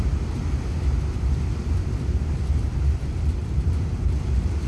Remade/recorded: remade